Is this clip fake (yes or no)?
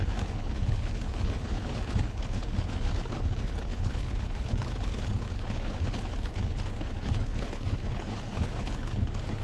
yes